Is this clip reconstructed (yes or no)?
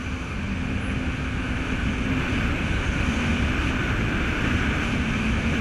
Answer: no